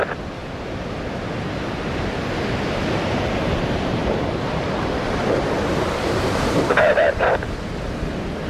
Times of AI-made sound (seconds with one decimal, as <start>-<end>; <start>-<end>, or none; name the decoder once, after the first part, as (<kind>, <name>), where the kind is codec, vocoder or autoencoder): 4.0-7.3 (vocoder, BigVGAN v2)